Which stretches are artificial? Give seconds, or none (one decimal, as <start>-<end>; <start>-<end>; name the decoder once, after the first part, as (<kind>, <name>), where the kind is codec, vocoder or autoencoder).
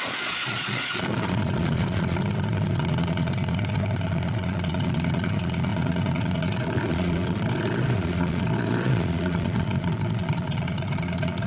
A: 0.0-11.5 (vocoder, Vocos)